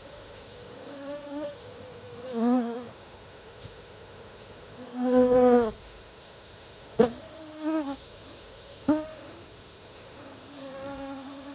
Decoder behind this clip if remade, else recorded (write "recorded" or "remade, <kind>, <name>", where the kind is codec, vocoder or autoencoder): remade, autoencoder, DAC-VAE